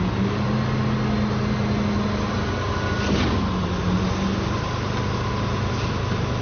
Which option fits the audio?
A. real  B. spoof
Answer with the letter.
A